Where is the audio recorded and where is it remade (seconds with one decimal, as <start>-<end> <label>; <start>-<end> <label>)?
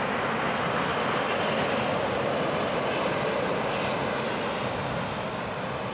0.0-5.9 recorded